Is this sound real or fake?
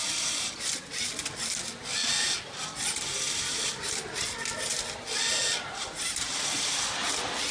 real